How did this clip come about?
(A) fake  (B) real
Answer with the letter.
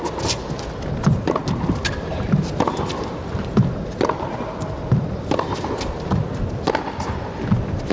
B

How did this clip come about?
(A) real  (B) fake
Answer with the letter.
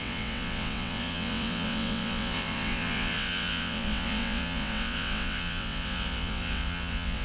B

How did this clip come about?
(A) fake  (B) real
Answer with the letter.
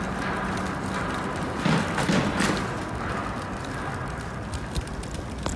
B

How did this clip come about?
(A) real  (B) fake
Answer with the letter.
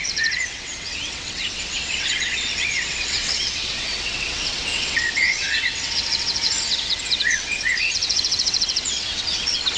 B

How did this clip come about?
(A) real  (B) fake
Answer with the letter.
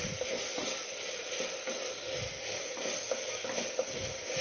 A